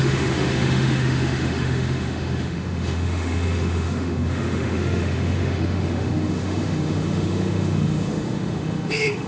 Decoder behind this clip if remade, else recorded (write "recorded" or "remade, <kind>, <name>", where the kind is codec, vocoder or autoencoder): remade, autoencoder, DAC-VAE